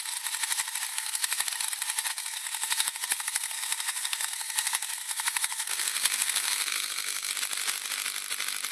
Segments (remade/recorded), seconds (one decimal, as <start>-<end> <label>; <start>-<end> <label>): 0.0-0.9 recorded; 0.9-1.5 remade; 1.5-2.1 recorded; 2.1-7.3 remade; 7.3-8.7 recorded